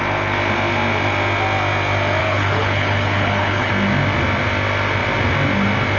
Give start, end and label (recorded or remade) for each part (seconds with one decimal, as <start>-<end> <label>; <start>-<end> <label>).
0.0-2.2 recorded; 2.2-3.7 remade; 3.7-6.0 recorded